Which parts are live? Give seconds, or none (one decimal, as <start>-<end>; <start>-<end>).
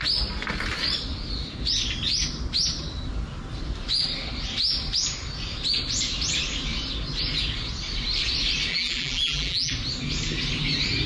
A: 0.0-8.7; 9.7-11.1